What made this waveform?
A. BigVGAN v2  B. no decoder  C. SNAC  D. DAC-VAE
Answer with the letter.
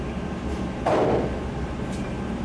B